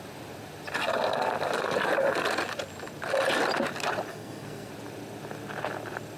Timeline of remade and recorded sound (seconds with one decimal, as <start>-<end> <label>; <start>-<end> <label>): 0.0-4.1 recorded; 4.1-4.7 remade; 4.7-6.2 recorded